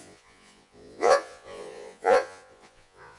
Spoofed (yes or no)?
yes